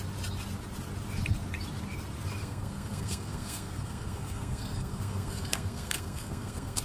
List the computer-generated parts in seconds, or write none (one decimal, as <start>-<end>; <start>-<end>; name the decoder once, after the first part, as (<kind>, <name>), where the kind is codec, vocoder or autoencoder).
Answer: 2.4-6.8 (codec, SNAC)